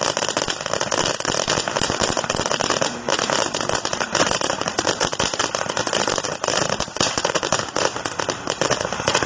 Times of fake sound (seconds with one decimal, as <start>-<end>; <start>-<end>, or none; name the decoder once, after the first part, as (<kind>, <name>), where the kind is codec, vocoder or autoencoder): 3.9-5.4 (vocoder, Vocos); 6.3-8.0; 8.7-9.3

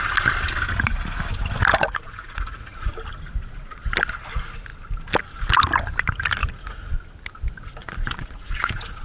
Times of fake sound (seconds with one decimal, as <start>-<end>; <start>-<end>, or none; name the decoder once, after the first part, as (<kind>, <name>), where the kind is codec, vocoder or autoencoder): 1.8-2.9 (vocoder, Vocos); 6.4-6.9; 7.8-9.0

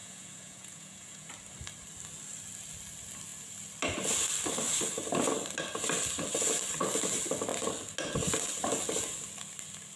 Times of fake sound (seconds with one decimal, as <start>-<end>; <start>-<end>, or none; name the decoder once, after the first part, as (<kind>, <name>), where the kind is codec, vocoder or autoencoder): 0.0-1.3 (vocoder, Vocos)

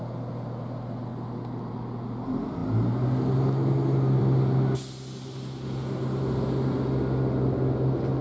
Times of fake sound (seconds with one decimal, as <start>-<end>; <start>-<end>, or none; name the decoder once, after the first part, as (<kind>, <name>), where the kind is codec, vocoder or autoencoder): none

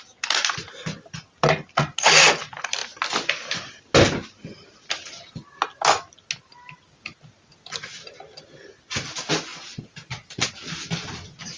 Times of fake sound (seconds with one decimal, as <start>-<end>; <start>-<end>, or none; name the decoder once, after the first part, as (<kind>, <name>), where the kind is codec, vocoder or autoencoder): 9.5-10.5 (vocoder, Vocos)

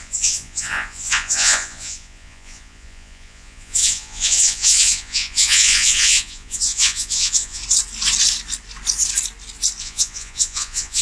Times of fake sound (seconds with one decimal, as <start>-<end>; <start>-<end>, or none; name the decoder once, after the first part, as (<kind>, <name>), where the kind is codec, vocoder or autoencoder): 0.0-7.6 (vocoder, Vocos); 9.8-11.0

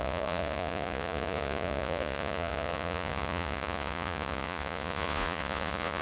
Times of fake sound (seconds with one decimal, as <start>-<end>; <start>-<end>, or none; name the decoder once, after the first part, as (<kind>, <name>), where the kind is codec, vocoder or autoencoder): 0.0-6.0 (vocoder, Vocos)

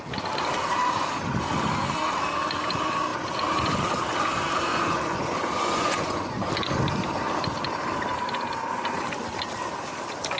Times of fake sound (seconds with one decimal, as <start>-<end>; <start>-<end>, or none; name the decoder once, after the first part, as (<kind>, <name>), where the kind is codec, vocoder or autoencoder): 4.7-6.5 (vocoder, Vocos)